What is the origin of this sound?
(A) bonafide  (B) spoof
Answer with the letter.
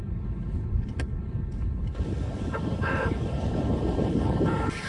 B